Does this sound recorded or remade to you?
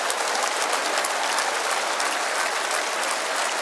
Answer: recorded